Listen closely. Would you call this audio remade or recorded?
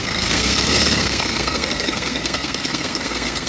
remade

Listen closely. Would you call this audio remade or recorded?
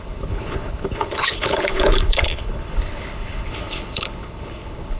remade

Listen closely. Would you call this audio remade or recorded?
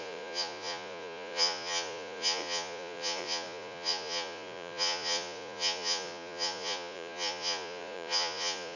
remade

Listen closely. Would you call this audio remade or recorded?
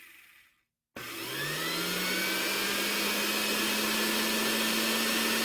recorded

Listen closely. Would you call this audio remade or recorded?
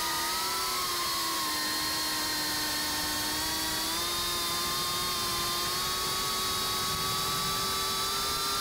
recorded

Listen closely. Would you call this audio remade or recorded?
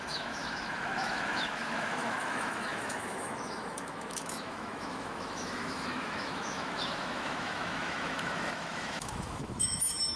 remade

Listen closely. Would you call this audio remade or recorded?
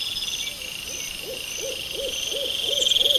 recorded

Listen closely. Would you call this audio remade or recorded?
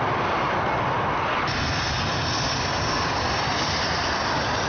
recorded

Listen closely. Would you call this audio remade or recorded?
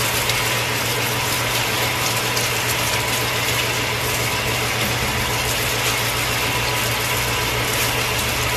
recorded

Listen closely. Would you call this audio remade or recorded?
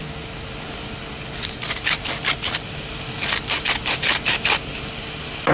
recorded